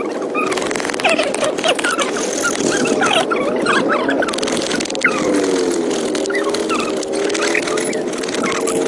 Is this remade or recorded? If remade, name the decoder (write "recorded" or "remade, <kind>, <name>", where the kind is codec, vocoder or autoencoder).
recorded